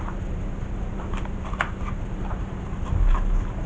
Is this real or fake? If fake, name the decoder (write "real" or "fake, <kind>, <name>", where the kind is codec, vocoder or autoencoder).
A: real